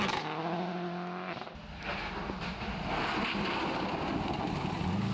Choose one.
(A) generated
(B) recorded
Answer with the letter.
B